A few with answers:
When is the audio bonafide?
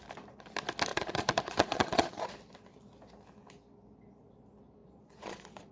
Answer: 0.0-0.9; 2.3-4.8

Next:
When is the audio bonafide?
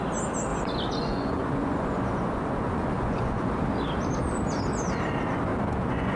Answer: 0.0-0.5; 3.5-5.5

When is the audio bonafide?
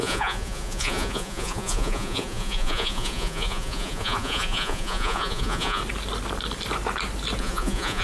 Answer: 5.8-7.4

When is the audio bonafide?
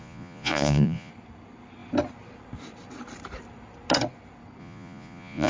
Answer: 1.1-4.6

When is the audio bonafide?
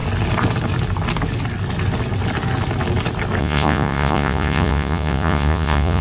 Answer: 0.0-3.4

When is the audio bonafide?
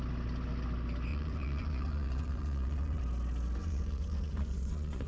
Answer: 0.0-1.1; 3.0-3.6